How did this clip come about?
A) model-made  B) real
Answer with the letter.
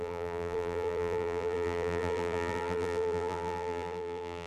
A